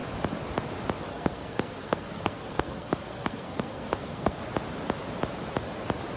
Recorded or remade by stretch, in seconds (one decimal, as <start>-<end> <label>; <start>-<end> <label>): 0.0-1.1 recorded; 1.1-4.4 remade; 4.4-6.2 recorded